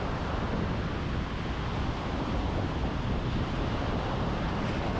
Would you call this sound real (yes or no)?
yes